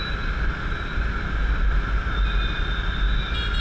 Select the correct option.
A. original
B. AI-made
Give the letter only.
A